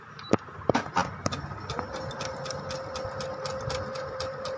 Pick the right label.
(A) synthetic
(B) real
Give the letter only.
B